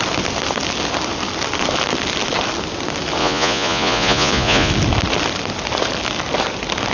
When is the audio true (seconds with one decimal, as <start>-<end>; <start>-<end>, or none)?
0.0-3.2; 4.7-6.9